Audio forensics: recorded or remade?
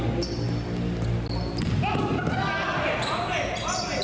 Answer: recorded